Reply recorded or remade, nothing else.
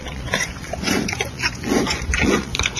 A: remade